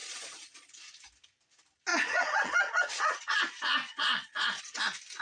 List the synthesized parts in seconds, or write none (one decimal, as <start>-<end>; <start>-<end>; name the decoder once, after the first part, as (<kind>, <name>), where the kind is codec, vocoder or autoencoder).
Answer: 0.0-0.7 (vocoder, Vocos); 1.9-4.8